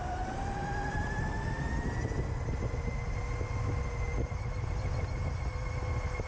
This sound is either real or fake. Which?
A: real